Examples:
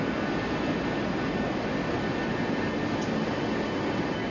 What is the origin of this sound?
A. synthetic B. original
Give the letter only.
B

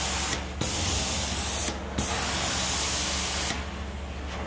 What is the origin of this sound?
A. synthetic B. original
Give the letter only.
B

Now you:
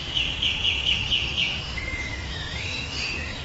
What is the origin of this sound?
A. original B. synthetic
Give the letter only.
B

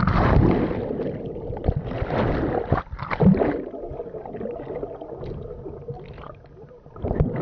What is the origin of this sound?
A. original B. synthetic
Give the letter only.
A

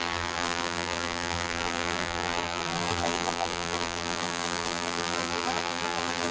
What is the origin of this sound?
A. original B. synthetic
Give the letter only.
B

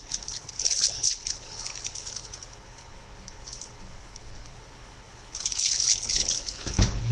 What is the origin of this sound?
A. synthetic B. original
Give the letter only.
A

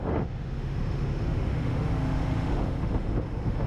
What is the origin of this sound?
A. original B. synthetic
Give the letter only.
B